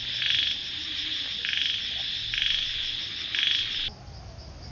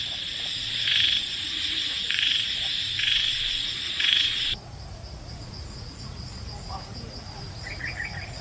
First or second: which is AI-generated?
second